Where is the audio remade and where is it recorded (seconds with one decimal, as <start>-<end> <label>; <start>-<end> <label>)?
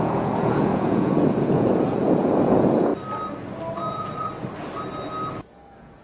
0.0-2.9 remade; 2.9-3.9 recorded; 3.9-4.3 remade; 4.3-5.4 recorded; 5.4-6.0 remade